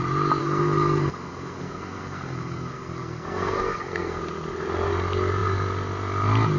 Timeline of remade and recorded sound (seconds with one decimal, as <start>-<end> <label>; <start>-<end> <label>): 0.0-0.4 recorded; 0.4-4.2 remade; 4.2-6.6 recorded